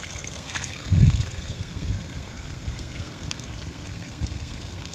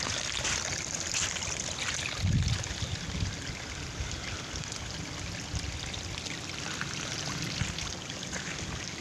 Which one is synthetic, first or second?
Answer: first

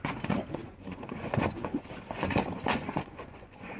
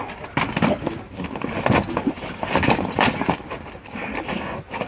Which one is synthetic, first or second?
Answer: first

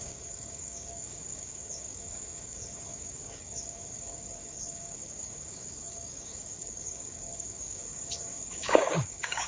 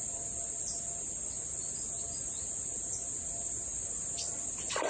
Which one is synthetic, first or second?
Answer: first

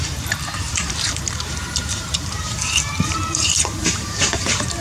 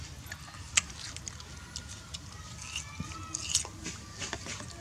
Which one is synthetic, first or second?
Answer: first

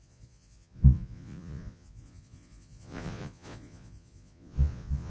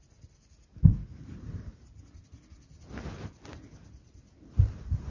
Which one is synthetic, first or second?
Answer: first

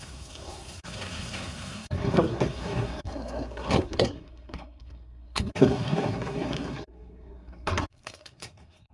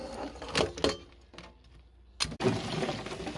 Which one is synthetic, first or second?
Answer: first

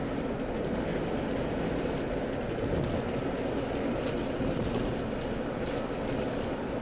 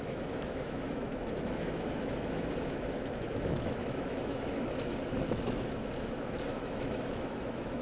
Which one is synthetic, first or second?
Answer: second